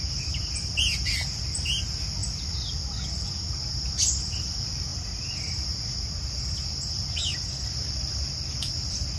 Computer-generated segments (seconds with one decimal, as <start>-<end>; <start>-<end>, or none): none